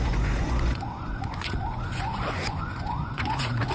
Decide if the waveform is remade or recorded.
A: remade